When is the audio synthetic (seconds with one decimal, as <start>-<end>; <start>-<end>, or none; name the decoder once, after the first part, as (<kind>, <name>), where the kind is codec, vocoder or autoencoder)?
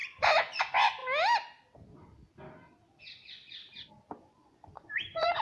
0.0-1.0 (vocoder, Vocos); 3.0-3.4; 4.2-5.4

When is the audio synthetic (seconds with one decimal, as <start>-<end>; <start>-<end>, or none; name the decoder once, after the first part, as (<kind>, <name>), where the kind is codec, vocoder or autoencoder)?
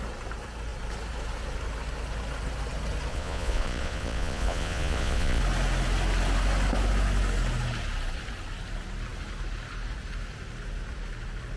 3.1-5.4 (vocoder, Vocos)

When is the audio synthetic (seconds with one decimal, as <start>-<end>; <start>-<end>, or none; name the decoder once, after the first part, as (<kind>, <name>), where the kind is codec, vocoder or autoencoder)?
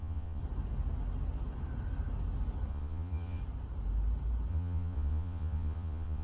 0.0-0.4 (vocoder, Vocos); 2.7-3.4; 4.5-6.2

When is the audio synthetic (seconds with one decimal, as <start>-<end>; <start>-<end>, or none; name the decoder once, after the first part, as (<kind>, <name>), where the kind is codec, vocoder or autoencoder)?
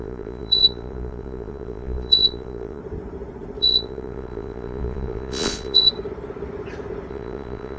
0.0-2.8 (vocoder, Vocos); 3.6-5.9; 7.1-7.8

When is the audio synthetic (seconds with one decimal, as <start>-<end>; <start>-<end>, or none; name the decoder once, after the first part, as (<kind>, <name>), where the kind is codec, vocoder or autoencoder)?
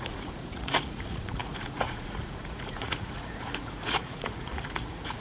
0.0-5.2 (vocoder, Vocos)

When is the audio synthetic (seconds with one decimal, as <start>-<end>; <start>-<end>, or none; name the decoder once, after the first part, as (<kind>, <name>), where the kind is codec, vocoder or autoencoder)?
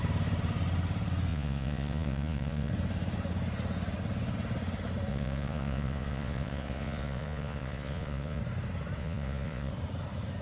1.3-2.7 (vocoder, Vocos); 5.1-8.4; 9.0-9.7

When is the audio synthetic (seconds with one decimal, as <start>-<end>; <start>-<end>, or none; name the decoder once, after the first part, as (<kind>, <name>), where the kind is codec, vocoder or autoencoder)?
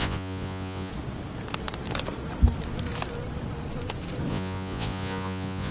0.0-0.9 (vocoder, Vocos); 4.3-5.7